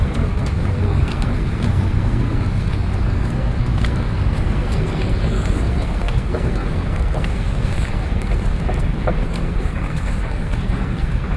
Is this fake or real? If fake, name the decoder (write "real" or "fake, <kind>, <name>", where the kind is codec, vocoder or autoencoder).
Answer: fake, codec, SNAC